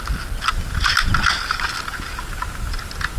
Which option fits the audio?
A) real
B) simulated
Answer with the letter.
A